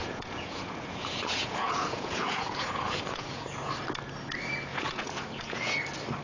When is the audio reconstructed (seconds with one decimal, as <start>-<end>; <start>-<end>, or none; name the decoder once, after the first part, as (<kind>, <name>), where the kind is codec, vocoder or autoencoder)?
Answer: 0.0-3.7 (vocoder, Vocos); 4.7-5.8